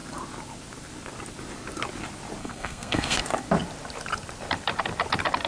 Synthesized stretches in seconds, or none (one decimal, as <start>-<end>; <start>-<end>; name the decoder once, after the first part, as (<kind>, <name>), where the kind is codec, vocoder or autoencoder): 2.4-3.2 (codec, SNAC)